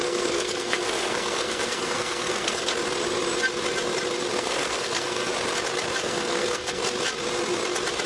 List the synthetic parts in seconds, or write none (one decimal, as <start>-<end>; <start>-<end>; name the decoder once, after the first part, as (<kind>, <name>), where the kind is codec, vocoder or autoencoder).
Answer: 0.0-2.7 (codec, SNAC); 4.3-5.3; 6.0-6.8